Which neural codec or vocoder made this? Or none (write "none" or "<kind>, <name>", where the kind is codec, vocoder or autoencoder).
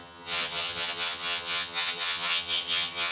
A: vocoder, HiFi-GAN